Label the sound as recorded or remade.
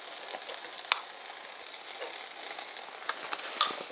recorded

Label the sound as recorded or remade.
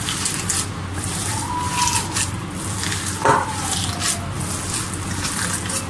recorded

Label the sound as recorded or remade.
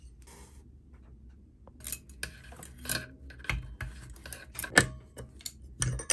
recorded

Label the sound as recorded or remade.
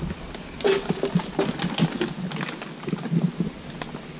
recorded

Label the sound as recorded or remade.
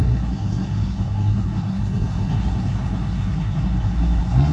remade